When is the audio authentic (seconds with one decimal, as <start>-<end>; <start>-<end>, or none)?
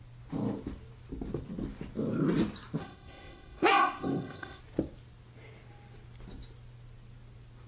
0.0-2.8; 4.6-7.7